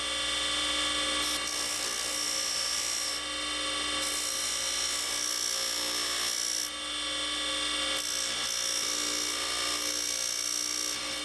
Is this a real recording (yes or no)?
yes